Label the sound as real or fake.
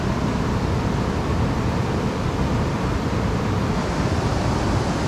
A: real